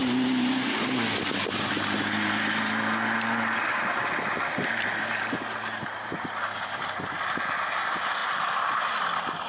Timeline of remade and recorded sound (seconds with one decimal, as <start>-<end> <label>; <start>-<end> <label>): 0.0-9.5 recorded